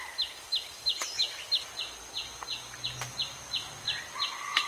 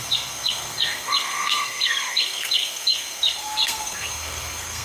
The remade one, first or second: second